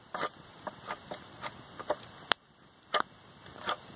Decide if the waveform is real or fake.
real